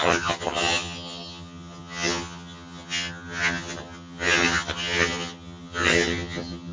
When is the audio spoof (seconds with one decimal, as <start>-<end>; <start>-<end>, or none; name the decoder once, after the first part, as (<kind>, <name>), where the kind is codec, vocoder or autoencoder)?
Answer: 0.0-6.7 (vocoder, HiFi-GAN)